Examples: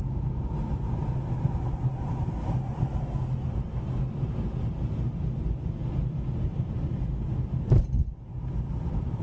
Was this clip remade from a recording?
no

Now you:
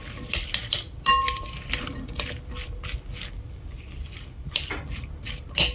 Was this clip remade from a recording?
no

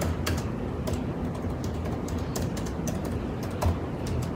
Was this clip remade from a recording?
no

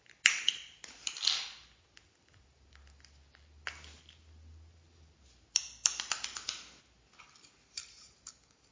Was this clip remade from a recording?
no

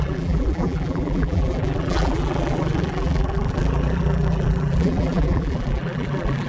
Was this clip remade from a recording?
yes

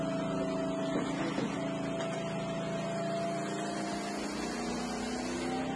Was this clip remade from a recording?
no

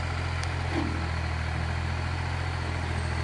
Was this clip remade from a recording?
no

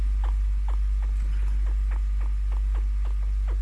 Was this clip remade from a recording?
no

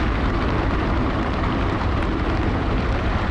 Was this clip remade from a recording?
yes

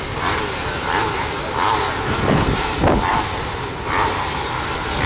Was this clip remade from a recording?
no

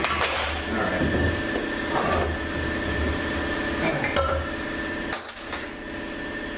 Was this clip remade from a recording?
yes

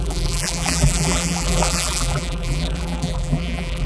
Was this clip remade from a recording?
yes